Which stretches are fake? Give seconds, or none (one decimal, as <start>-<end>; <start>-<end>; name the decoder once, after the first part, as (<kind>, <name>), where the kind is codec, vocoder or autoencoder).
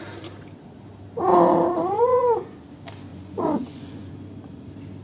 1.3-2.6 (vocoder, Vocos); 3.1-4.1